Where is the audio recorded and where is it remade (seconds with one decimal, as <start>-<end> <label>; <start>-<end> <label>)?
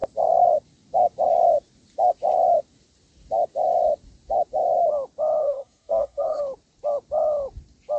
0.0-5.4 recorded; 5.4-6.4 remade; 6.4-8.0 recorded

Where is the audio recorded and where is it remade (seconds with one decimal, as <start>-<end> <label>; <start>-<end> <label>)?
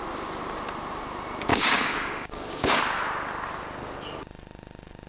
0.0-1.5 recorded; 1.5-2.8 remade; 2.8-5.1 recorded